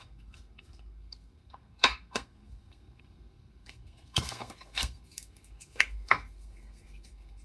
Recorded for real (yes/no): no